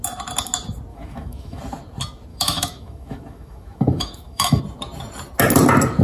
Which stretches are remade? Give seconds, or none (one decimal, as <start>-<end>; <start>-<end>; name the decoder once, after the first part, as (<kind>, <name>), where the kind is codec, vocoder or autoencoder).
0.9-1.6 (autoencoder, DAC-VAE); 2.3-4.6